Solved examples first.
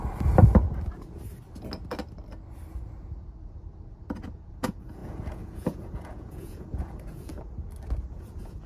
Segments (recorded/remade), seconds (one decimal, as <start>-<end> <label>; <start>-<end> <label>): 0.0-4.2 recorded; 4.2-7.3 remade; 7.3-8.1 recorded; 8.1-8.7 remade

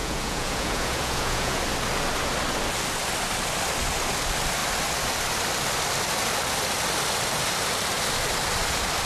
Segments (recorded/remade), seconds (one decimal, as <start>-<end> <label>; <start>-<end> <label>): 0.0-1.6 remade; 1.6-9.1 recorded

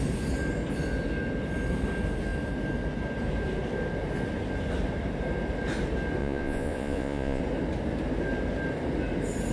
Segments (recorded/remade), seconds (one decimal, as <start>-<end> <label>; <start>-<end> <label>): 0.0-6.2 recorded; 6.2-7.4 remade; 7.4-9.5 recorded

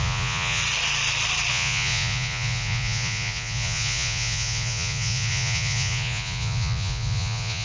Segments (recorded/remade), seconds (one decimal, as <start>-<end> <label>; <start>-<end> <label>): 0.0-0.6 remade; 0.6-1.5 recorded; 1.5-7.6 remade